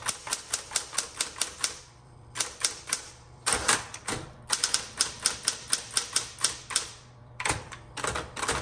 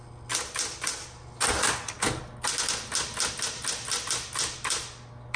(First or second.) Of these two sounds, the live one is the second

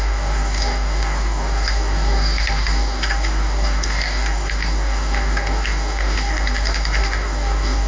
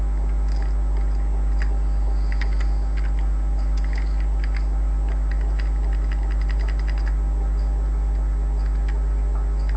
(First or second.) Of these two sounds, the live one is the second